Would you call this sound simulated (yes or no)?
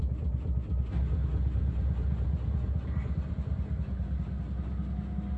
no